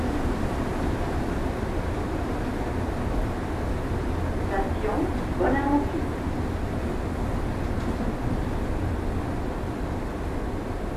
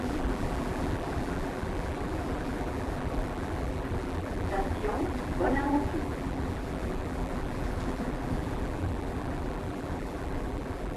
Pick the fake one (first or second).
second